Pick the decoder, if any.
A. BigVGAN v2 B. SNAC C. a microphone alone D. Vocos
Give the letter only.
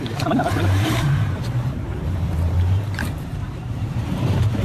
A